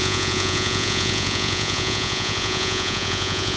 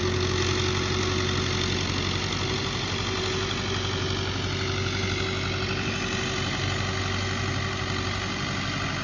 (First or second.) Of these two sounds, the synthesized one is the first